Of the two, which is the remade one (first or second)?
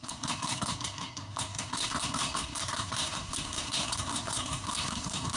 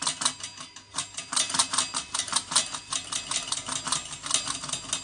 first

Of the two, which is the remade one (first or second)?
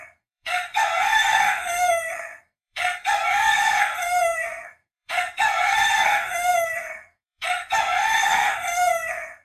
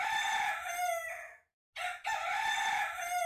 first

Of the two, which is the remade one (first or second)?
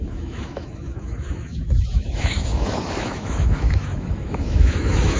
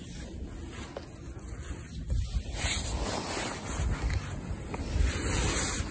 first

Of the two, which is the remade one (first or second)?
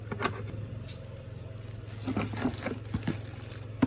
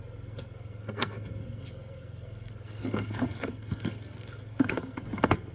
second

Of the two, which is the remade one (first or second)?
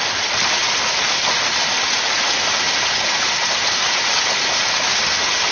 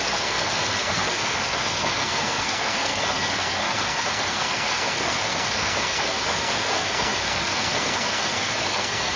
second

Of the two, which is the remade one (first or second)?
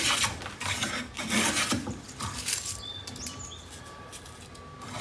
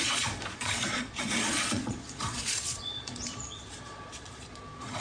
second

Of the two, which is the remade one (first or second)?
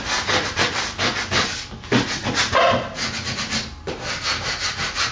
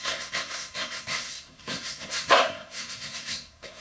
second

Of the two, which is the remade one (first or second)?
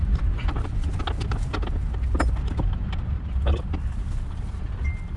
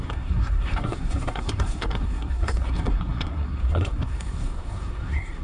second